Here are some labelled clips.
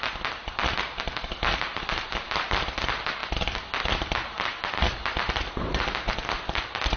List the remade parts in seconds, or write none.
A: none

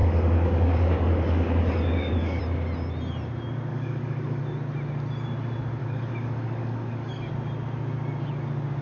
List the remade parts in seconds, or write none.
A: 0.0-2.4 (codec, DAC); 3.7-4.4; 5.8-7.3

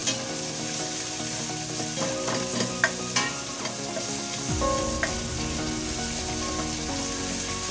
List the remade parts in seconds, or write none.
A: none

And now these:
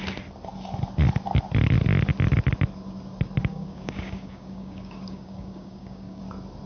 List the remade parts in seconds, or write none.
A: 3.4-6.2 (codec, DAC)